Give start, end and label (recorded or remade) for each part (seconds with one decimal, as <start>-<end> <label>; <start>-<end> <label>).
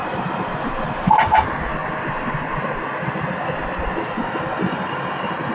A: 0.0-1.3 remade; 1.3-5.5 recorded